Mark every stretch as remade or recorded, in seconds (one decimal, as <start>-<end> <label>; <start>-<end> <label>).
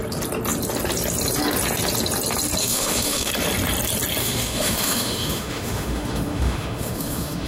0.0-2.6 recorded; 2.6-3.3 remade; 3.3-4.2 recorded; 4.2-7.5 remade